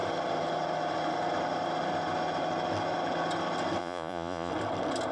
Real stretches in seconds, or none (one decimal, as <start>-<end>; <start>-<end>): 0.0-3.8; 4.5-5.1